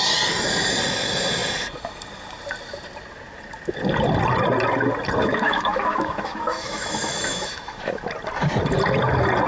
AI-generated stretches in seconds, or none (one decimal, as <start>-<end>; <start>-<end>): 5.2-8.0